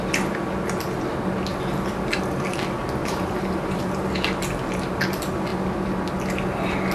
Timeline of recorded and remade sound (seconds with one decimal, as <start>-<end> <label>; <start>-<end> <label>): 0.0-1.5 recorded; 1.5-2.2 remade; 2.2-3.0 recorded; 3.0-3.8 remade; 3.8-5.5 recorded; 5.5-6.1 remade; 6.1-6.9 recorded